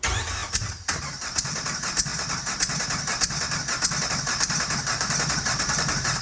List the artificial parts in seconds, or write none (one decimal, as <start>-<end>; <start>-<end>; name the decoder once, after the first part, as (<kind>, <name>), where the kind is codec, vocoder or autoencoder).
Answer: 0.0-2.1 (vocoder, BigVGAN v2); 4.1-6.2